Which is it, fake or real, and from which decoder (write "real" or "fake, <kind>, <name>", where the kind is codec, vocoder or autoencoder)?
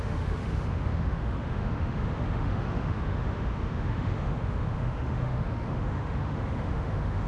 fake, autoencoder, DAC-VAE